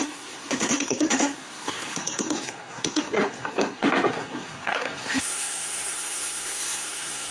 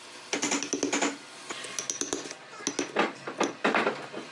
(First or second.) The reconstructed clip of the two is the first